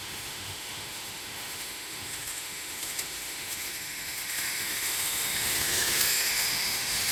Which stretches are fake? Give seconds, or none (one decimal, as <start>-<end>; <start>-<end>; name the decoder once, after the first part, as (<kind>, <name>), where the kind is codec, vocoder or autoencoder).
0.0-7.1 (autoencoder, DAC-VAE)